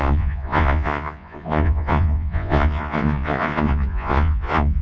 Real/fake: fake